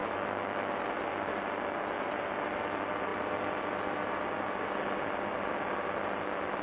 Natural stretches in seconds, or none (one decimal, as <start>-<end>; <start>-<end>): 0.7-6.6